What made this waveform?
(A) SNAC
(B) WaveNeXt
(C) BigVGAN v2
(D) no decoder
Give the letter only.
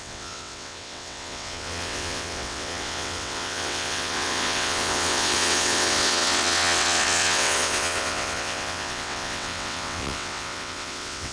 B